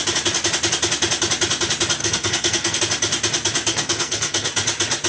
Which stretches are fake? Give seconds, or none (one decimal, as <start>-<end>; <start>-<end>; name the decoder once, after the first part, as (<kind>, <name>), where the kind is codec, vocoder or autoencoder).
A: 2.0-2.8 (codec, SNAC); 3.7-4.5